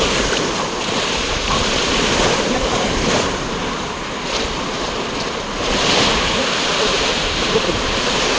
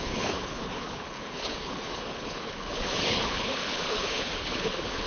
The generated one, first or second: second